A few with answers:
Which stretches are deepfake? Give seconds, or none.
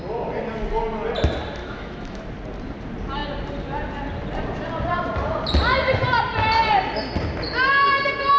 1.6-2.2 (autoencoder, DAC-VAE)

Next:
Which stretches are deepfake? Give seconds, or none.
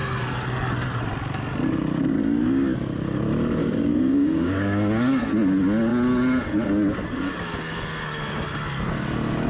3.6-5.2 (codec, DAC)